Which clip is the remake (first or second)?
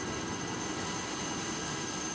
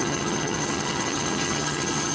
second